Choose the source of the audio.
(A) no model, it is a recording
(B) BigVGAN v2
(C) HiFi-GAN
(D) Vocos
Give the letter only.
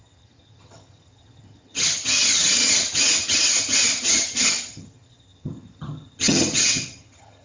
C